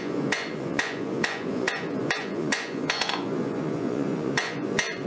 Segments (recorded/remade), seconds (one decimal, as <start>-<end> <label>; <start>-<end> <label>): 0.0-5.1 remade